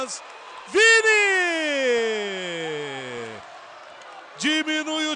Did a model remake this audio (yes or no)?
no